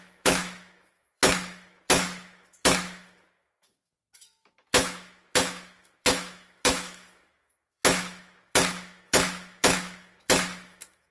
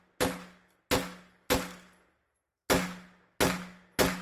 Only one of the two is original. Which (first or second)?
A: second